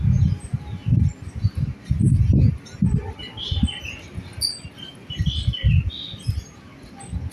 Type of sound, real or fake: real